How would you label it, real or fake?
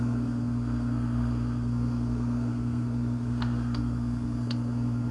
fake